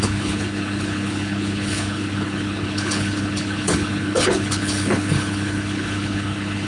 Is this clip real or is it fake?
fake